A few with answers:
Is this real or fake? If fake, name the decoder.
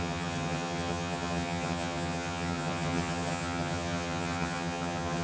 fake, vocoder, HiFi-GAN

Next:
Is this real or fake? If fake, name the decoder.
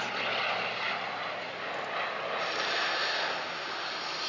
real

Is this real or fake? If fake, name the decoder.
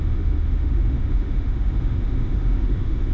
fake, autoencoder, DAC-VAE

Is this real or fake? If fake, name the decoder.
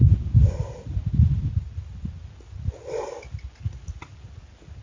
real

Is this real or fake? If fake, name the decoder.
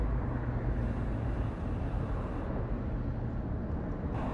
real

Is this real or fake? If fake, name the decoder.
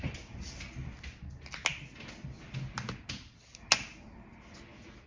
real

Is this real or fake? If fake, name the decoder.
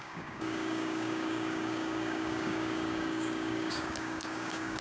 fake, codec, DAC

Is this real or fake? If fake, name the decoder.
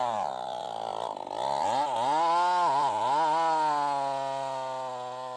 real